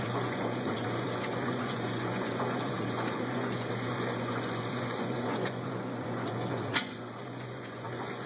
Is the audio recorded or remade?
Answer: remade